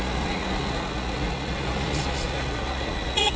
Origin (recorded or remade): remade